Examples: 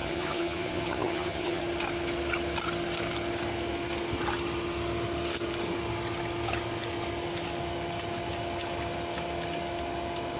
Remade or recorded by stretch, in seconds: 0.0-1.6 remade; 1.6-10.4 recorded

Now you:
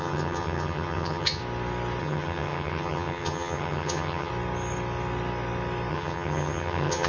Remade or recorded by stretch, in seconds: 0.0-1.4 remade; 1.4-2.0 recorded; 2.0-4.3 remade; 4.3-5.9 recorded; 5.9-7.1 remade